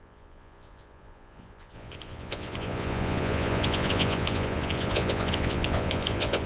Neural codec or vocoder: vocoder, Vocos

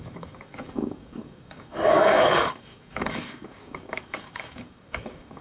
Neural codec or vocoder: codec, DAC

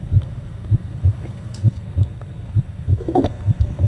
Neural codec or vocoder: codec, SNAC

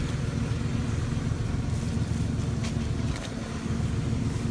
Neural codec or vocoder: none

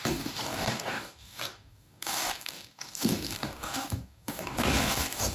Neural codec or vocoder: codec, DAC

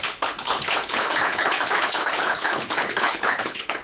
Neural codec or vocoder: codec, HILCodec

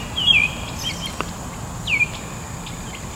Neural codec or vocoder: none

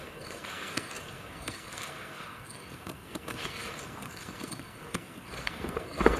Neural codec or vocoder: codec, SNAC